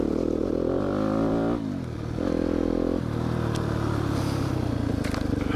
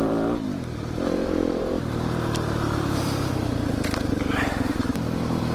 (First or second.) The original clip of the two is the first